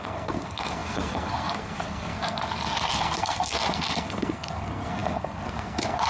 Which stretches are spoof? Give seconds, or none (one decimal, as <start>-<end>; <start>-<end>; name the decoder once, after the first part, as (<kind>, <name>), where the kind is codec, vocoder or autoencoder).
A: 0.0-6.1 (codec, SNAC)